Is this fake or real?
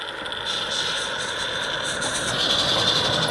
real